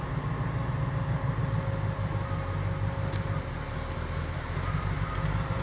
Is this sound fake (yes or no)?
no